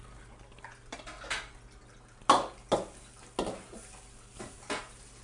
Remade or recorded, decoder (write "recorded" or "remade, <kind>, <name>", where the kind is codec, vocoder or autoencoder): recorded